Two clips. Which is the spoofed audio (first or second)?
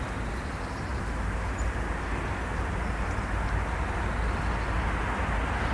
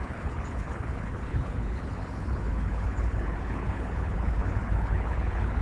second